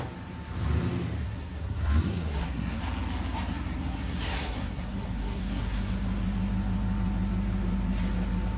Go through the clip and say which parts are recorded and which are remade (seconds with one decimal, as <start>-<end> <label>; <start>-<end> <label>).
0.0-1.2 recorded; 1.2-2.8 remade; 2.8-3.5 recorded; 3.5-5.9 remade; 5.9-8.6 recorded

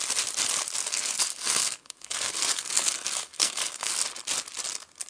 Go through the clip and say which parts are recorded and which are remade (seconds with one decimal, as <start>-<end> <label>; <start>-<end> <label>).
0.0-0.8 recorded; 0.8-3.9 remade; 3.9-5.1 recorded